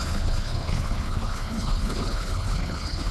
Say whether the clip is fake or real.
fake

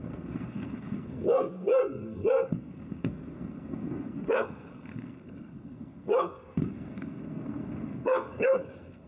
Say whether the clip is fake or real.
fake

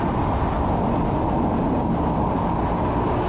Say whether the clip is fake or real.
real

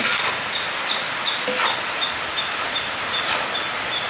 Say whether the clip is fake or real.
fake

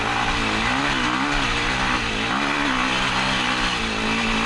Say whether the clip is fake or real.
real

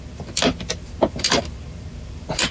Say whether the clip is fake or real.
fake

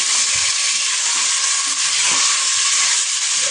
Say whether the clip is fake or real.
real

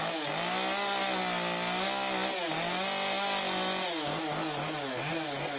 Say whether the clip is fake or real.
real